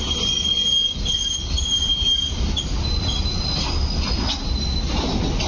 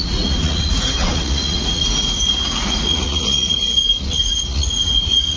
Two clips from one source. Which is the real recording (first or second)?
first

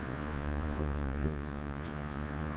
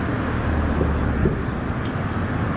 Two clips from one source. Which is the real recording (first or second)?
second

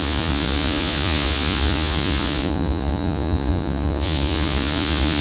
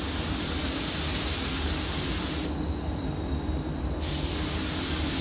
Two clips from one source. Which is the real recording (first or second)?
second